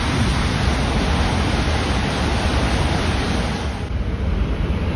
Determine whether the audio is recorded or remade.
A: recorded